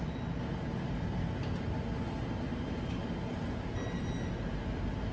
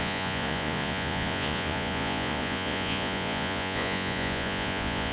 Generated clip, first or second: second